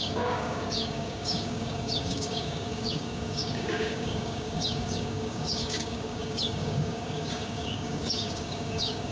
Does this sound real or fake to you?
fake